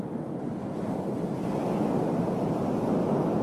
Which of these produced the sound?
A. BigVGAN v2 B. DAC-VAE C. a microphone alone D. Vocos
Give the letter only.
C